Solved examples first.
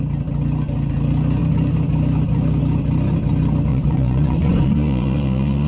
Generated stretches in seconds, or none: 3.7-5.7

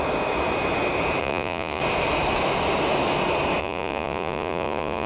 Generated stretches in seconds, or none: 1.2-1.8; 3.6-5.1

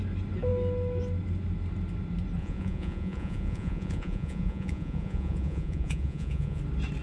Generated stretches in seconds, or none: 2.4-6.6

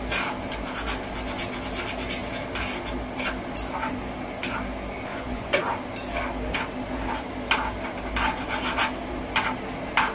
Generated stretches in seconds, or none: 5.1-5.6

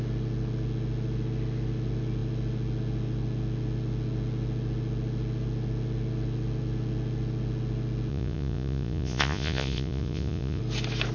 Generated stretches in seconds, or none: 8.1-10.6

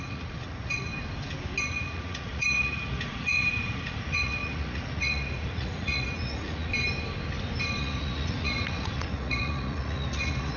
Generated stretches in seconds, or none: 0.0-0.9; 1.6-6.7; 7.8-10.6